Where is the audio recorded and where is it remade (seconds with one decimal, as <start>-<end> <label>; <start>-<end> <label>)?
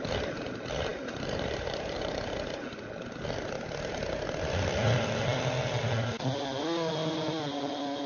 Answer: 0.0-0.9 recorded; 0.9-2.2 remade; 2.2-8.1 recorded